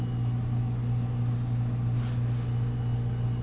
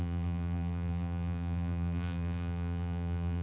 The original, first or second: first